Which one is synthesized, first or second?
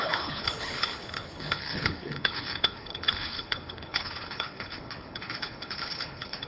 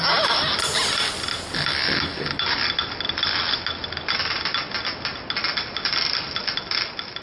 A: first